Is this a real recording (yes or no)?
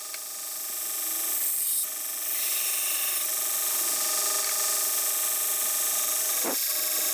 yes